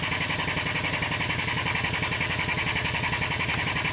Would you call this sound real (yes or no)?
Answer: yes